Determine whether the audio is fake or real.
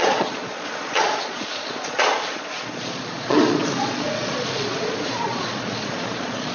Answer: fake